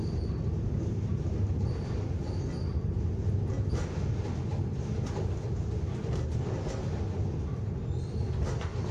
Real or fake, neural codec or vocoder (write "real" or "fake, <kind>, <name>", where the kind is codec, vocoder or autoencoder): real